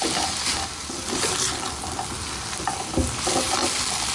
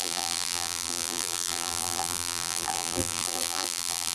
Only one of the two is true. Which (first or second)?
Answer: first